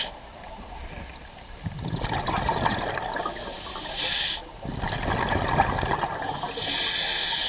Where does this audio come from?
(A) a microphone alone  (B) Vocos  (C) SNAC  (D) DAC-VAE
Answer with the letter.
A